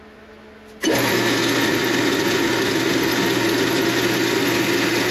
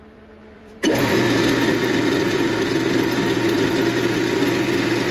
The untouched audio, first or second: first